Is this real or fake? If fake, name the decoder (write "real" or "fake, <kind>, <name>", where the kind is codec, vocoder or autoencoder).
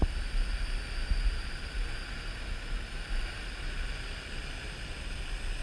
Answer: real